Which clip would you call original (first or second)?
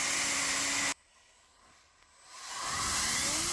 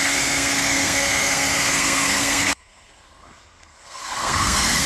first